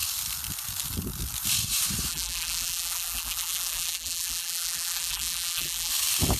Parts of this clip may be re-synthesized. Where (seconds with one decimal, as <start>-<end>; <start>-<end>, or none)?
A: 2.1-5.9